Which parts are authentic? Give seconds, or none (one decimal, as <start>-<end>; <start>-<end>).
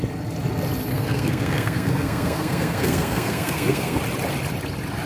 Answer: 0.0-0.9; 4.0-5.1